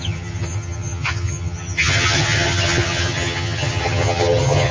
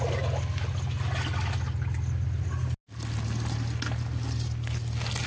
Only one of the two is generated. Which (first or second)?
first